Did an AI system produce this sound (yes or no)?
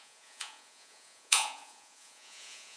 yes